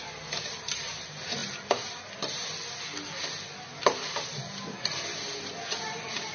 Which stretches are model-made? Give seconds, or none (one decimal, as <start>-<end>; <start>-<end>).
none